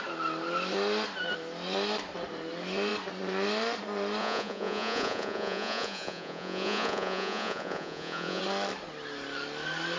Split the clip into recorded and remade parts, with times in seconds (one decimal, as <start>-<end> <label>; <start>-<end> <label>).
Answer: 0.0-4.2 recorded; 4.2-8.4 remade; 8.4-10.0 recorded